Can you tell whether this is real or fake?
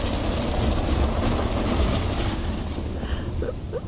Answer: real